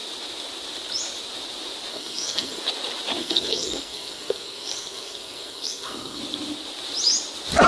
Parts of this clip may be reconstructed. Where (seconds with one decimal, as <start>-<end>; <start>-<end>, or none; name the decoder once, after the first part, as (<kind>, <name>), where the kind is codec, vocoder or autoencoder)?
1.9-2.6 (codec, SNAC); 3.2-6.2